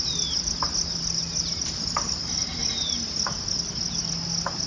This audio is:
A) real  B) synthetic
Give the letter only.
A